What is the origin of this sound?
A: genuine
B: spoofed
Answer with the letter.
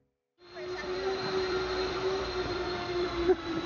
B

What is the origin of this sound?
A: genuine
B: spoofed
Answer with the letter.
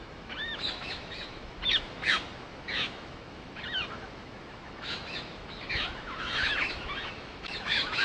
B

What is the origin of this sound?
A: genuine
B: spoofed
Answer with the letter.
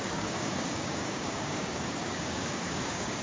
B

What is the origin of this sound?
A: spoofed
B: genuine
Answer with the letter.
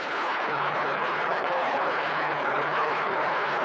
A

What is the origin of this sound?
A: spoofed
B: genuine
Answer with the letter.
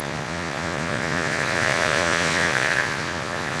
A